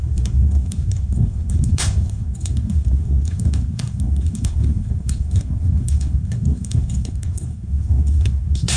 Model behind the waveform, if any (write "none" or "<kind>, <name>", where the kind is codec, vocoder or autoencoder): codec, SNAC